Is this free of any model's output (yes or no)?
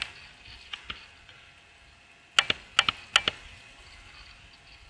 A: yes